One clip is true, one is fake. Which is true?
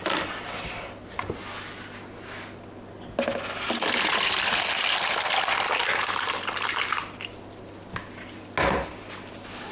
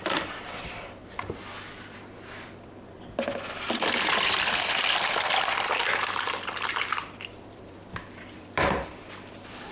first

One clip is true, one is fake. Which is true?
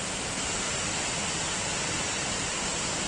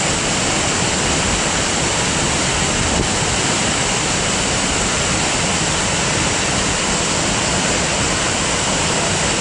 first